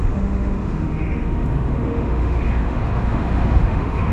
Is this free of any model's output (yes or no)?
no